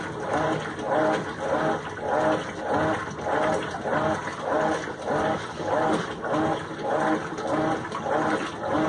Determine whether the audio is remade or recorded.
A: recorded